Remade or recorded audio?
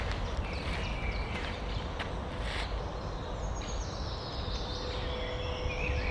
recorded